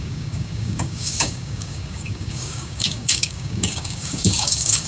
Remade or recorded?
remade